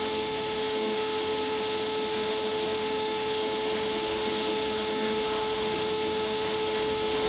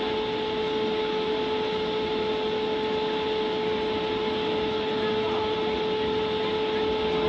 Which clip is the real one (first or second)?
second